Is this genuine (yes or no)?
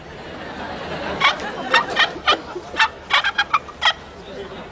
yes